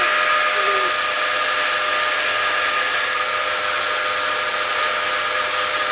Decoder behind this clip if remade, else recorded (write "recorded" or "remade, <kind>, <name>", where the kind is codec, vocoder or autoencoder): recorded